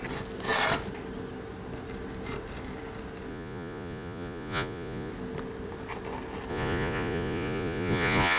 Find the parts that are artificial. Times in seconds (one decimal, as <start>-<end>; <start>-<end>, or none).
3.3-5.1; 6.5-8.4